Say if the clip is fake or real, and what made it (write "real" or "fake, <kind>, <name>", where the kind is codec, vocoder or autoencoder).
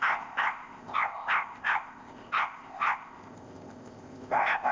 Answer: fake, codec, ZipCodec